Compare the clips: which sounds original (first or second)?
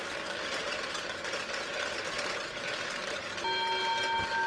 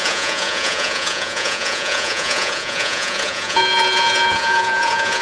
first